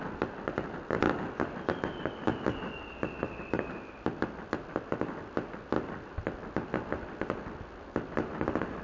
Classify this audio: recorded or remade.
recorded